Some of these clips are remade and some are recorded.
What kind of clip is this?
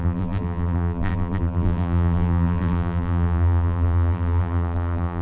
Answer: remade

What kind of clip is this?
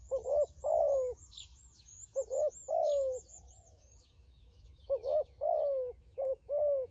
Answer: remade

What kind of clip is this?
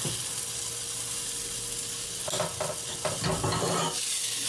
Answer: recorded